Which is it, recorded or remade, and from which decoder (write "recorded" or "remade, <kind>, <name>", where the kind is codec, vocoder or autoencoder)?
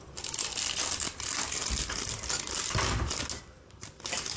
recorded